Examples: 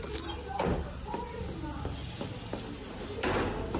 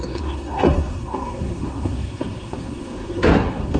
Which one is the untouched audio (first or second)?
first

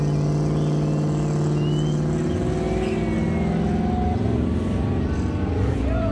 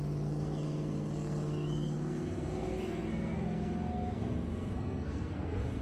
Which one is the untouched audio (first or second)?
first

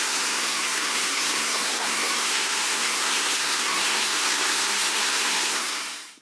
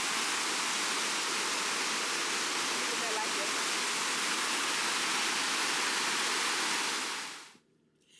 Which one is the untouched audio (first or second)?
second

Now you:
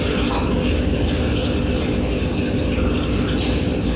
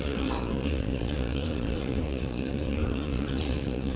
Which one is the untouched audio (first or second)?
first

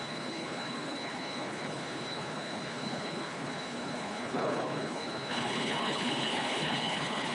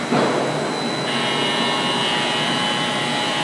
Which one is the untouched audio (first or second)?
second